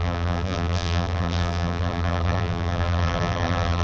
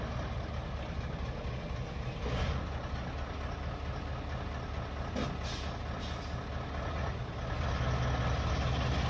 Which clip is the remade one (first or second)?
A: first